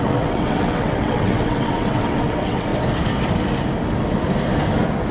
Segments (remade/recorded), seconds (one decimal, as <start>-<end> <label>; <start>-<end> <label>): 0.0-2.7 remade; 2.7-5.1 recorded